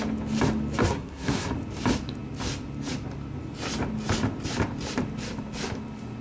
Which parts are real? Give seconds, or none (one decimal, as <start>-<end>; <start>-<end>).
0.0-0.8; 1.5-6.2